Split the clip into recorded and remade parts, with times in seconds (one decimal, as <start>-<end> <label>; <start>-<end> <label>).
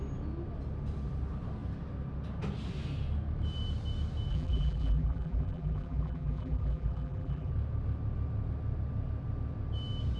0.0-4.3 recorded; 4.3-7.5 remade; 7.5-10.2 recorded